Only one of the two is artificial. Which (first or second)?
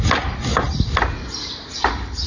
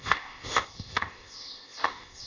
second